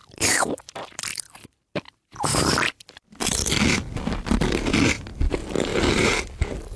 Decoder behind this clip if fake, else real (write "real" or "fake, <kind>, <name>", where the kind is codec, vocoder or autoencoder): fake, vocoder, BigVGAN v2